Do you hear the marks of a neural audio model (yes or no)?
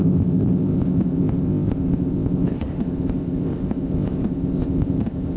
yes